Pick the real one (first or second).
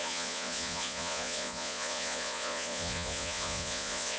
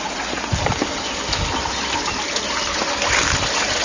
second